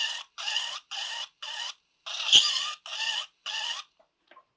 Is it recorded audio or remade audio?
recorded